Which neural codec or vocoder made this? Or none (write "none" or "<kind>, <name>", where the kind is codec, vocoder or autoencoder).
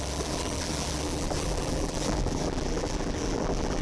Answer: vocoder, BigVGAN v2